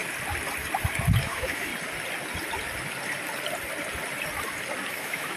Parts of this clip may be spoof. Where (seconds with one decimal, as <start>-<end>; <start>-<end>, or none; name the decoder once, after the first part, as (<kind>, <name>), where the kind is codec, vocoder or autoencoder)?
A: 1.2-1.7 (autoencoder, DAC-VAE); 4.9-5.4